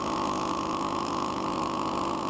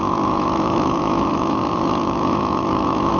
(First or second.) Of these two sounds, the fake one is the second